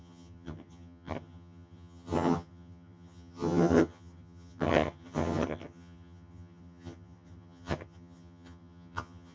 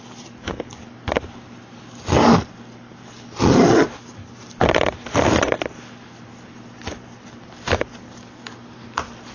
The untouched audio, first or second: second